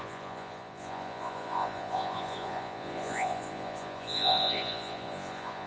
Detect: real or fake fake